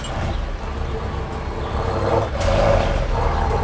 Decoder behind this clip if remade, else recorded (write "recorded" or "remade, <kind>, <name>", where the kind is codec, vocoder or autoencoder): recorded